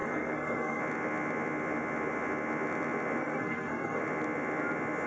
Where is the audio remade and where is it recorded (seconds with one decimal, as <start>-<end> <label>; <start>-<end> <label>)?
0.0-0.8 remade; 0.8-3.2 recorded; 3.2-4.0 remade; 4.0-5.1 recorded

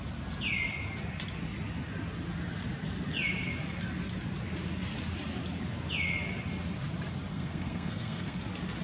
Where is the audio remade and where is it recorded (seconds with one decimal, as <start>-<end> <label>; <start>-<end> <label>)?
0.0-7.3 recorded; 7.3-8.4 remade; 8.4-8.8 recorded

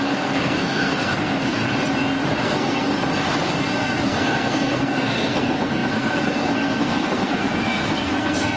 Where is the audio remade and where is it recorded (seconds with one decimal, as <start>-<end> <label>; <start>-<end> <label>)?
0.0-1.6 remade; 1.6-2.4 recorded; 2.4-2.9 remade; 2.9-3.5 recorded; 3.5-8.6 remade

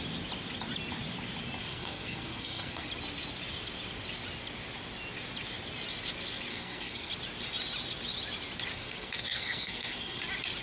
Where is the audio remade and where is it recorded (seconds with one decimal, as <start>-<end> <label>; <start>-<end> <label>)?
0.0-1.7 recorded; 1.7-2.9 remade; 2.9-6.5 recorded; 6.5-7.1 remade; 7.1-8.7 recorded; 8.7-10.2 remade; 10.2-10.6 recorded

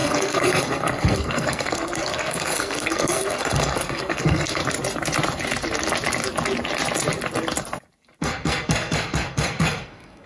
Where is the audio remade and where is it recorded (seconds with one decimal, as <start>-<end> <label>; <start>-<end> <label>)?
0.0-4.6 remade; 4.6-8.2 recorded; 8.2-10.3 remade